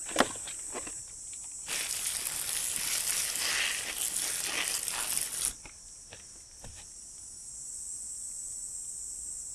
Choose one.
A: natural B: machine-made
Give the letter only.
A